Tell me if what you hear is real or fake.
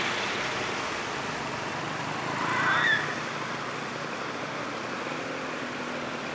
real